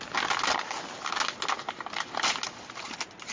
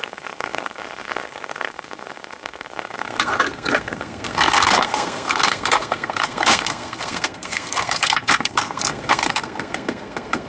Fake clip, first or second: second